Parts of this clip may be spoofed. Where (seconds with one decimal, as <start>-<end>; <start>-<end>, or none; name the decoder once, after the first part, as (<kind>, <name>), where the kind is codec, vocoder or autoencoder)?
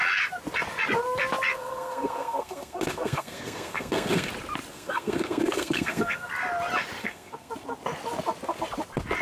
1.5-4.3 (codec, SNAC); 4.7-6.3; 7.0-7.5